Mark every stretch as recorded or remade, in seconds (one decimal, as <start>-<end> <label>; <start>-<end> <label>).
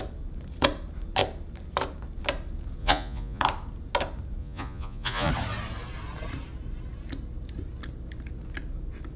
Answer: 0.0-2.8 recorded; 2.8-3.4 remade; 3.4-4.4 recorded; 4.4-5.3 remade; 5.3-9.2 recorded